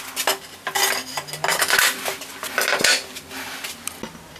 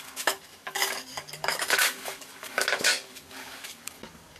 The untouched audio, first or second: first